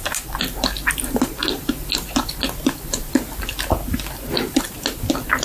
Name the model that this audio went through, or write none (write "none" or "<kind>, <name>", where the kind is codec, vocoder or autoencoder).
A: none